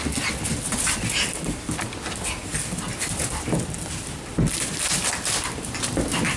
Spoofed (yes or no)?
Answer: yes